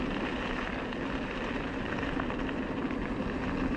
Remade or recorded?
recorded